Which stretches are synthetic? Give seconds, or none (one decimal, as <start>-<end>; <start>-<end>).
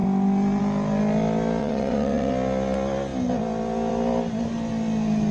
1.6-2.3